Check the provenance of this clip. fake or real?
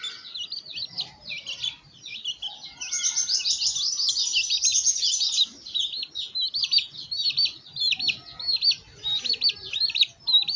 real